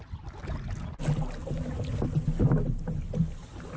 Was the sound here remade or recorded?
recorded